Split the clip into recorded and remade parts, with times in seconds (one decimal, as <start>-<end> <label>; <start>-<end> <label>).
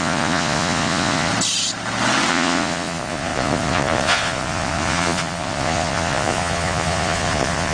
0.0-1.3 remade; 1.3-2.3 recorded; 2.3-7.7 remade